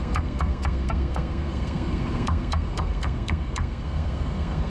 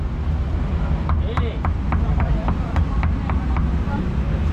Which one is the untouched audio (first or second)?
second